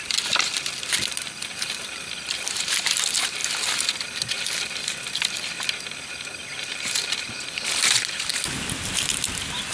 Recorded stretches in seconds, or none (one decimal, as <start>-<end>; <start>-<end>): 0.0-9.7